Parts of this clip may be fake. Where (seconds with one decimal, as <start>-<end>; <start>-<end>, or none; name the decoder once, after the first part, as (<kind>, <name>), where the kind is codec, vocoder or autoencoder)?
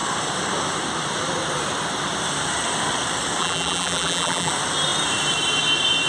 3.4-4.5 (vocoder, BigVGAN v2)